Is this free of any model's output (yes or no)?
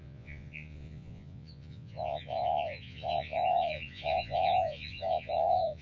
no